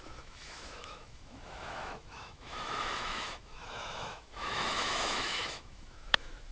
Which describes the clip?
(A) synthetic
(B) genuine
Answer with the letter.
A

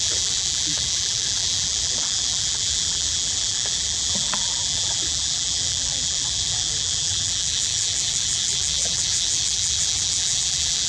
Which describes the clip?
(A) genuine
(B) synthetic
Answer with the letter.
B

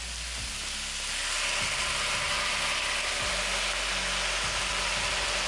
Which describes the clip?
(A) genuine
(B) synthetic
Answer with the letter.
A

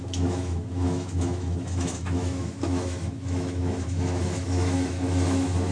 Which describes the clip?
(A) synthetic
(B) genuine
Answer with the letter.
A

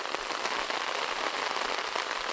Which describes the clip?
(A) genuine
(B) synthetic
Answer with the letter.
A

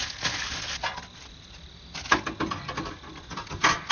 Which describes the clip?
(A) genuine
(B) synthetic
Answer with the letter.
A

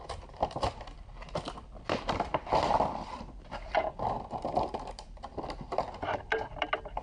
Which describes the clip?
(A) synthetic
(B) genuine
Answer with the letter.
A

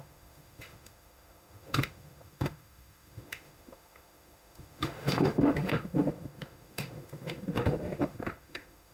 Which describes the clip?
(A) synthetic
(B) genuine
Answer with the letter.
A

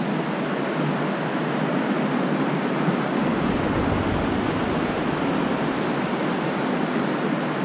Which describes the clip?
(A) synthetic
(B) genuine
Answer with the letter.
B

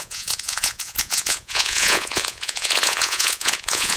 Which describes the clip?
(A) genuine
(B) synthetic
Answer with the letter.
B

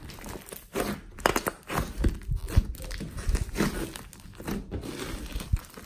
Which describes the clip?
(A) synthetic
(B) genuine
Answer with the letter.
B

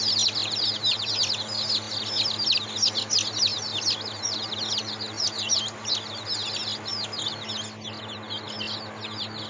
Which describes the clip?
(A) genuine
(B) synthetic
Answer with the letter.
A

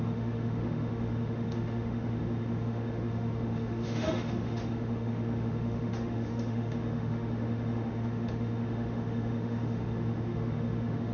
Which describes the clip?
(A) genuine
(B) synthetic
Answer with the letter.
B